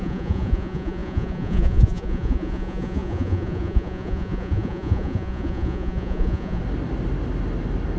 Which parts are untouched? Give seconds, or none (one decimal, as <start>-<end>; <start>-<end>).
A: 6.6-8.0

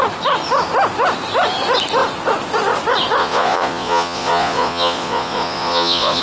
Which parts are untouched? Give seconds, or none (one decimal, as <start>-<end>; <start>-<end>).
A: 0.0-3.2

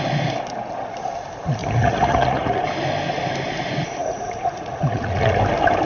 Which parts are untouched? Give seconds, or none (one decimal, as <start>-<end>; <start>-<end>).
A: 0.0-1.6; 2.6-4.0; 5.3-5.8